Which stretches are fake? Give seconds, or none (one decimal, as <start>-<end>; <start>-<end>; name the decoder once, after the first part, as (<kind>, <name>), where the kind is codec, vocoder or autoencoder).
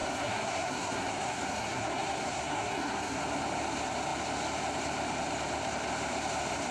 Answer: 0.0-3.2 (codec, SNAC)